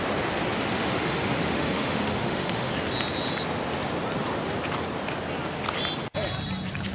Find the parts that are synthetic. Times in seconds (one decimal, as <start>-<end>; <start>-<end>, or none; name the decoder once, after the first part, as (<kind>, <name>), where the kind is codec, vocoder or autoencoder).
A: 0.7-2.7 (autoencoder, DAC-VAE)